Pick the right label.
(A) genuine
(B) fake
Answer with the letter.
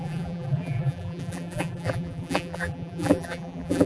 B